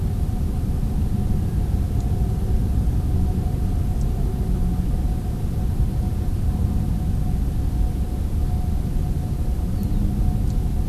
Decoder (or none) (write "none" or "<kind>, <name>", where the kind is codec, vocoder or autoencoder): none